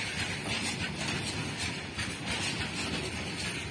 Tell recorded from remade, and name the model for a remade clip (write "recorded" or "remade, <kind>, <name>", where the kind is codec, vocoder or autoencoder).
recorded